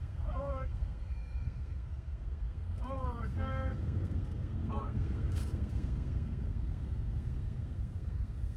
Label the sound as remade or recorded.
remade